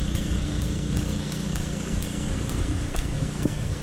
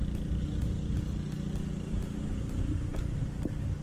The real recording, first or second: second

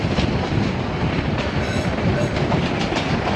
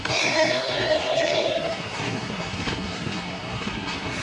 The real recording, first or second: first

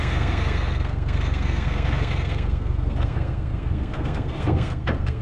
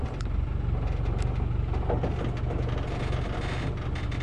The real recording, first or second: second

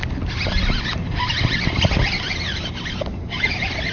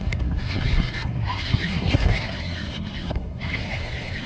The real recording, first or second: first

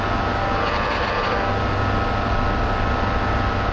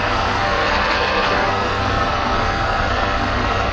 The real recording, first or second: first